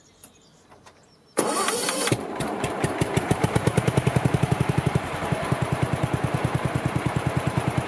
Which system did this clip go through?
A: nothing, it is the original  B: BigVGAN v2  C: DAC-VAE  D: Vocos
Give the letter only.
B